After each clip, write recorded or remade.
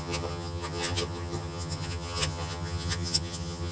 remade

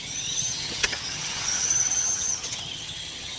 remade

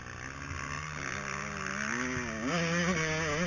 recorded